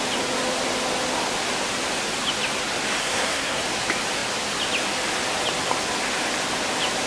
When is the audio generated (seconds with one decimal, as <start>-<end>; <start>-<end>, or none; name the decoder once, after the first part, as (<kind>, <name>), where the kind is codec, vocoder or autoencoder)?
3.0-3.6 (codec, SNAC)